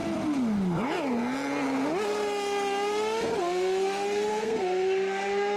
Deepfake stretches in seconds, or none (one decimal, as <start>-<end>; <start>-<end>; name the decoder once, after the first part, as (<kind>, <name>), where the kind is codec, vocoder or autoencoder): 3.4-5.6 (codec, SNAC)